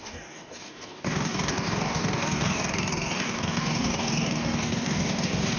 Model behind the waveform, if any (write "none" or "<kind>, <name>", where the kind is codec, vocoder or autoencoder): codec, DAC